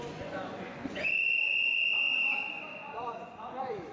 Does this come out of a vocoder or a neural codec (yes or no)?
yes